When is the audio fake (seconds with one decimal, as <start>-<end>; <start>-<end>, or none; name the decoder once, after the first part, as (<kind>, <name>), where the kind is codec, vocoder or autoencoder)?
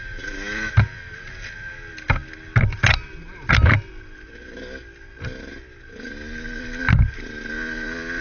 none